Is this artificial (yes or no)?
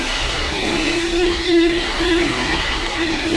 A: yes